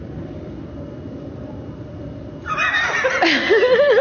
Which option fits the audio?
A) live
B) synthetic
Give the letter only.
A